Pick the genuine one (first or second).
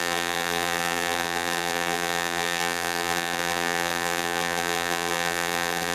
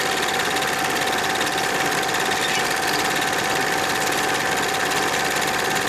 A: second